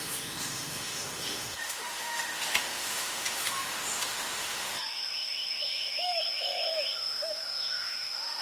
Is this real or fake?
fake